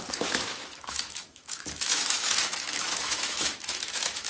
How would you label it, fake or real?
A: fake